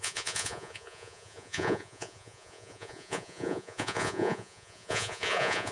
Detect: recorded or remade remade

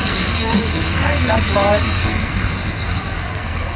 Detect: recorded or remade remade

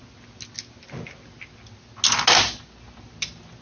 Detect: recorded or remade recorded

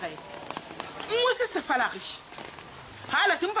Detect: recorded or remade recorded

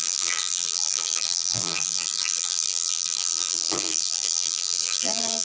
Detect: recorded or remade remade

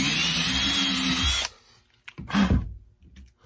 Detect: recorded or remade recorded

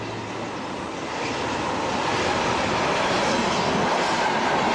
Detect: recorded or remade recorded